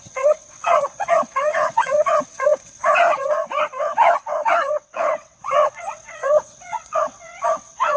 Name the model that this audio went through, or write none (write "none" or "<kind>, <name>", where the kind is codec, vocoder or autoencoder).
vocoder, WaveNeXt